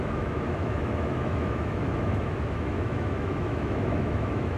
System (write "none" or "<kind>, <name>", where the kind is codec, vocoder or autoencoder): autoencoder, DAC-VAE